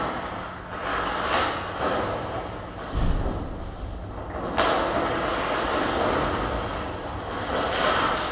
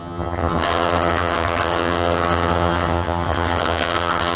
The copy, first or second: second